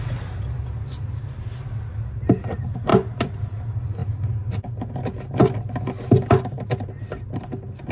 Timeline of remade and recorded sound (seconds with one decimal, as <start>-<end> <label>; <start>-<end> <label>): 0.0-7.9 recorded